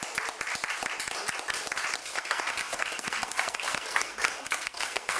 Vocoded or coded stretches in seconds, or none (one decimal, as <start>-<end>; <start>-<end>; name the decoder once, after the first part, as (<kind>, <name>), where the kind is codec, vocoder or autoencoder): 2.0-5.2 (codec, SNAC)